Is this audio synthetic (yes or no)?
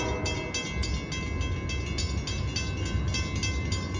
no